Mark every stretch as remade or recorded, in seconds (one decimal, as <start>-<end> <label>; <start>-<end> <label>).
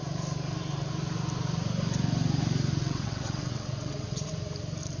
0.0-2.8 recorded; 2.8-4.3 remade; 4.3-5.0 recorded